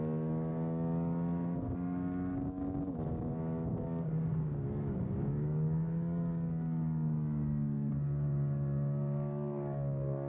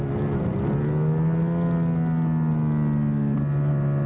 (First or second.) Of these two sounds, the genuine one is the second